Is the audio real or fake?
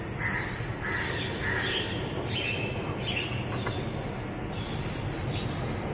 real